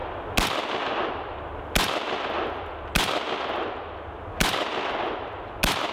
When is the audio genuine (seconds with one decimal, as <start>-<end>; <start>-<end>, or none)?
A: 0.0-5.9